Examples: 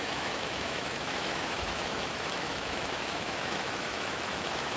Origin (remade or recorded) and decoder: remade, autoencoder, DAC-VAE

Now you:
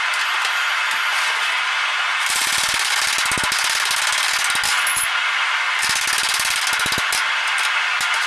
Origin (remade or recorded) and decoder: recorded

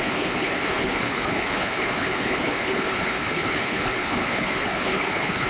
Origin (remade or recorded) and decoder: remade, codec, HILCodec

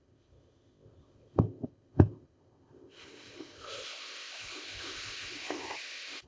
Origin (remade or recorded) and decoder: remade, codec, ZipCodec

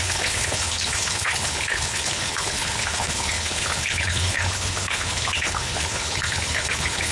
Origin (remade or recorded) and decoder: remade, codec, HILCodec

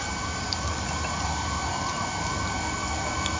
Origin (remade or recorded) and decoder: recorded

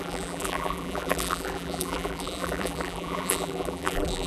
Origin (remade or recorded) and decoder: remade, vocoder, BigVGAN v2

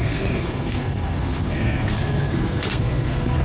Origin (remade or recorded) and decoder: remade, codec, SNAC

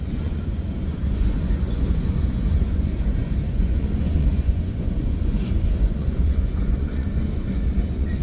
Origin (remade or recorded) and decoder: remade, vocoder, Vocos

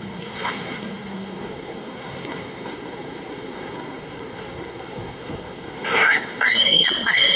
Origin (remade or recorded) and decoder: remade, codec, SNAC